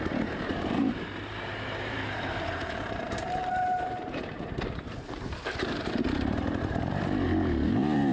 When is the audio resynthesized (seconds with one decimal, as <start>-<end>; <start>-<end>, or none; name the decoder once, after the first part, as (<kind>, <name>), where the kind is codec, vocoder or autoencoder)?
0.0-8.1 (vocoder, BigVGAN v2)